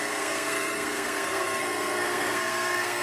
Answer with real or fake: fake